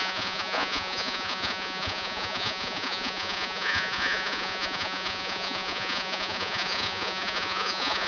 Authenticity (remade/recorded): remade